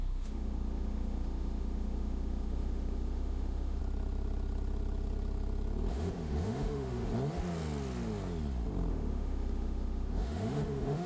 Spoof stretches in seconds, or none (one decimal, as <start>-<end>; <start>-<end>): 0.0-3.8; 5.9-7.1; 8.9-11.1